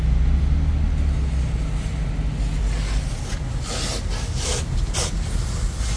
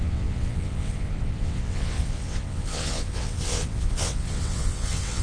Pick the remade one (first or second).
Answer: second